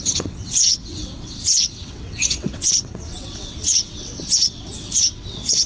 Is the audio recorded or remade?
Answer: remade